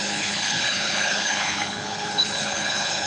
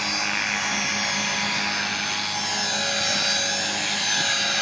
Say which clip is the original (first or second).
second